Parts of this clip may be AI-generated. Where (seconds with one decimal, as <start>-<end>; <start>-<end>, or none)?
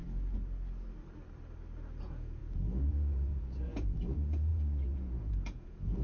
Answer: 2.0-2.4; 2.9-6.0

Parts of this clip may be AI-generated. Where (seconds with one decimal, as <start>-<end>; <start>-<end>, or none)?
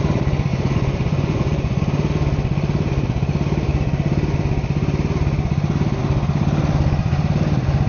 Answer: 0.5-1.8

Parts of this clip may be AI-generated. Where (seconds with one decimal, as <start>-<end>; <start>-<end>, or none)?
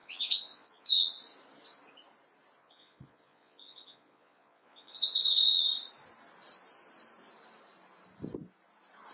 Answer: 0.0-1.1; 2.6-5.6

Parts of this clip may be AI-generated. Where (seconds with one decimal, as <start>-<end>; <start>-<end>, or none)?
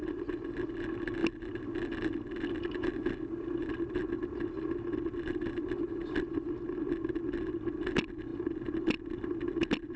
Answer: none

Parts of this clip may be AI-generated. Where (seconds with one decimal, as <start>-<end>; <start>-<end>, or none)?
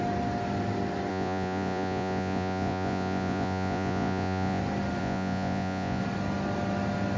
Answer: 1.1-4.6; 5.0-6.0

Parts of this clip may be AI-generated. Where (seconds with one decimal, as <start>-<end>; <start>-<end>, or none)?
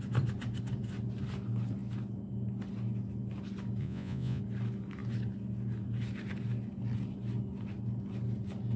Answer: 3.8-4.4